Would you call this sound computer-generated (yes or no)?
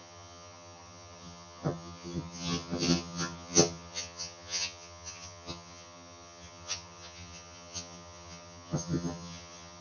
yes